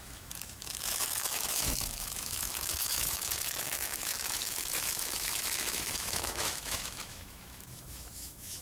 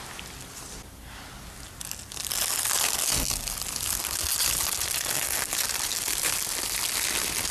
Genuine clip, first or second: second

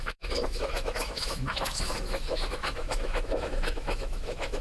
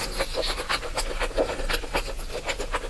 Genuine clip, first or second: second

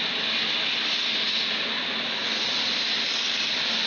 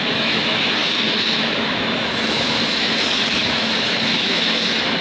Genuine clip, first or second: first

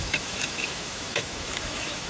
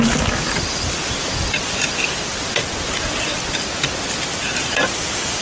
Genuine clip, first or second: second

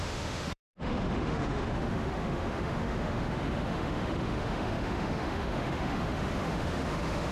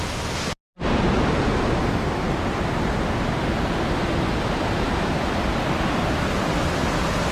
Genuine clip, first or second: second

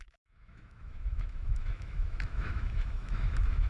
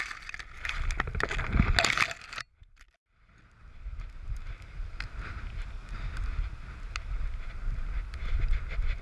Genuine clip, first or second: second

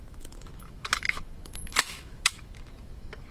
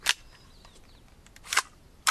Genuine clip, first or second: second